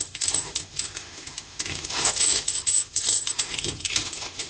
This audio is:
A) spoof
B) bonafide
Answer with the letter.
A